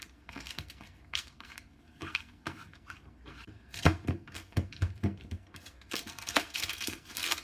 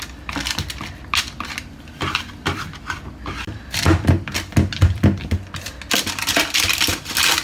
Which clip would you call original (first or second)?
second